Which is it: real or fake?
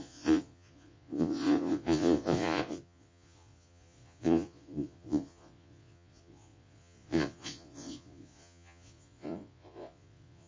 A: fake